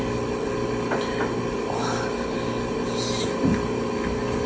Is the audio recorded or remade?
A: recorded